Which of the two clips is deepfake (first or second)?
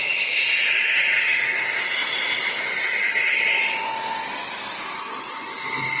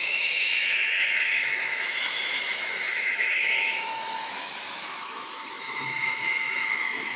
second